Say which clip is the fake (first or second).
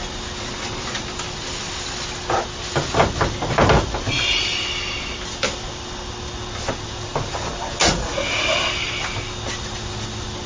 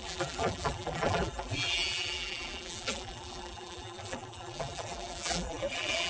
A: second